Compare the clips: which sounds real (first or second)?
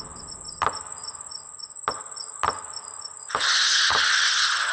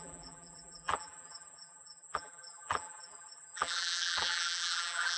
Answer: first